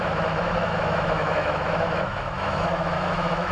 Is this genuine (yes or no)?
no